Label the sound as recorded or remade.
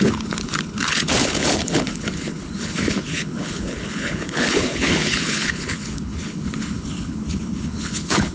remade